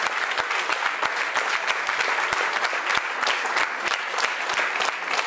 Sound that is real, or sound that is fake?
real